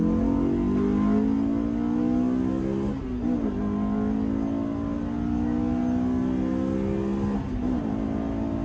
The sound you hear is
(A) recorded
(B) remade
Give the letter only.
A